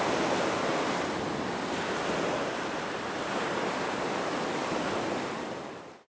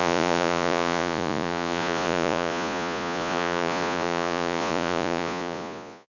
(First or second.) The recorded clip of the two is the first